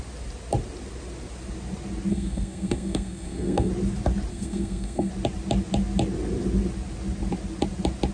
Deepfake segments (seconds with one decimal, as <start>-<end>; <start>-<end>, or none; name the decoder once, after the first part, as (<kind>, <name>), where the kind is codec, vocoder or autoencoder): 2.1-3.7 (codec, SNAC); 4.3-5.1